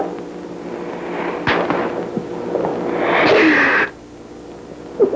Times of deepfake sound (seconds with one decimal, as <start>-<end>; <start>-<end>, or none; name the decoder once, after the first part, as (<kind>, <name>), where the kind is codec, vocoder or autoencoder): 1.3-1.9 (vocoder, BigVGAN v2)